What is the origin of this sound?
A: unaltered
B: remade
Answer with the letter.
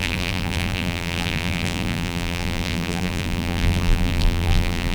B